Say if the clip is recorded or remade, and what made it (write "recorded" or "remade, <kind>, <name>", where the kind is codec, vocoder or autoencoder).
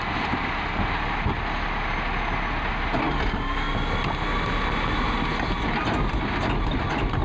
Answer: recorded